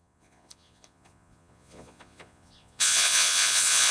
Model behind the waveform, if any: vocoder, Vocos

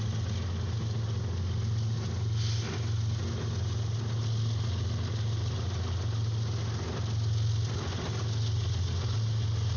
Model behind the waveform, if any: none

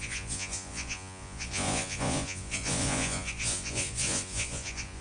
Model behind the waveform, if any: vocoder, Vocos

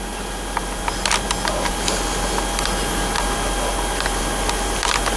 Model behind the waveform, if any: none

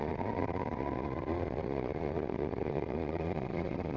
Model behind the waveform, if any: vocoder, Vocos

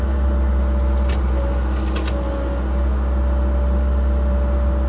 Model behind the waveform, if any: none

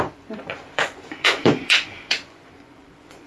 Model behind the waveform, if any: vocoder, Vocos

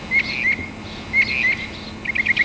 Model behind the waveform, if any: none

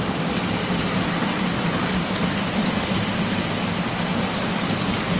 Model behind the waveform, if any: none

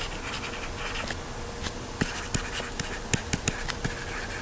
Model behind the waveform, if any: none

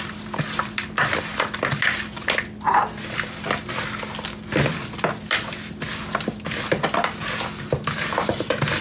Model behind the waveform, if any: none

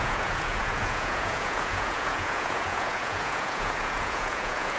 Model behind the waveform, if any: vocoder, Vocos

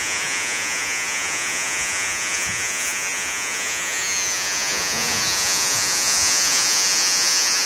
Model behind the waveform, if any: vocoder, Vocos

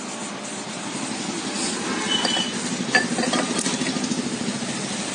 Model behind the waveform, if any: none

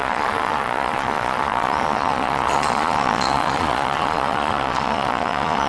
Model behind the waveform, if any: vocoder, Vocos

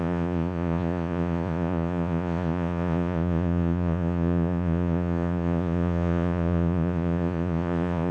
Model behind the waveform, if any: vocoder, Vocos